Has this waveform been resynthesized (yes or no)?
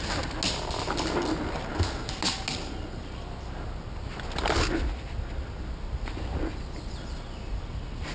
no